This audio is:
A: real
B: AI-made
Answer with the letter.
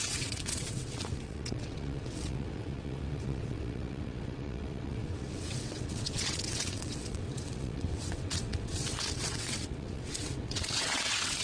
B